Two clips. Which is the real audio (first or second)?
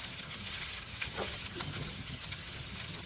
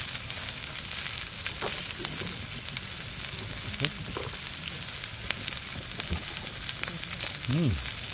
second